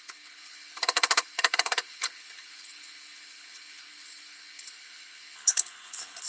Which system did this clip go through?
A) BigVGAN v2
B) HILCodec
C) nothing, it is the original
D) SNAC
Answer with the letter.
B